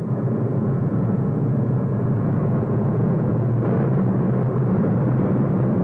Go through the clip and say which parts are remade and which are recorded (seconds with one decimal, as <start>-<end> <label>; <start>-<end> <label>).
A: 0.0-3.3 remade; 3.3-5.8 recorded

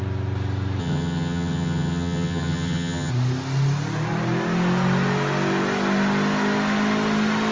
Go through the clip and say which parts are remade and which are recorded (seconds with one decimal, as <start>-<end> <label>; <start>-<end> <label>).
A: 0.0-0.8 recorded; 0.8-3.1 remade; 3.1-7.5 recorded

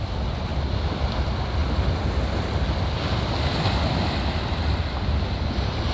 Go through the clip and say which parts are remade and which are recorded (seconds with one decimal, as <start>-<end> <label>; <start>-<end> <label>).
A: 0.0-5.9 recorded

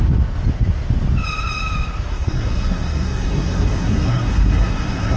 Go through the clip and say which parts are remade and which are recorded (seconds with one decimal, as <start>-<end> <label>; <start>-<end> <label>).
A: 0.0-2.1 recorded; 2.1-5.2 remade